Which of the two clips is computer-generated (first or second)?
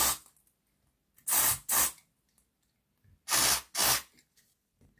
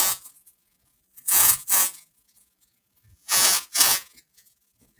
second